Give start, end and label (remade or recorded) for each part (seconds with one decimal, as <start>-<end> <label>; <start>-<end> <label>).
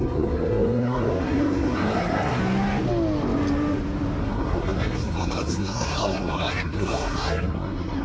0.0-2.4 remade; 2.4-4.2 recorded; 4.2-8.0 remade